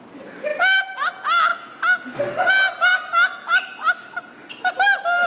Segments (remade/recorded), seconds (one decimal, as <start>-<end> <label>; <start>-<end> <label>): 0.0-5.3 recorded